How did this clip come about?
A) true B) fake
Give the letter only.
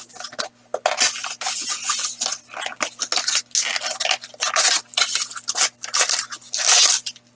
A